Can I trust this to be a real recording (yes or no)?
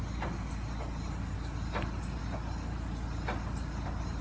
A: yes